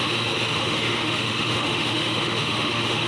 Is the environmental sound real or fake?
fake